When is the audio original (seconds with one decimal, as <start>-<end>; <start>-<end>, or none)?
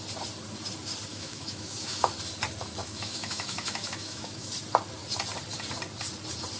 0.0-1.1; 2.1-2.8; 4.5-6.6